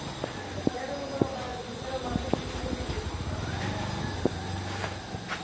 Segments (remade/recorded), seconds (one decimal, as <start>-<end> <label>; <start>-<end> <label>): 0.0-5.4 recorded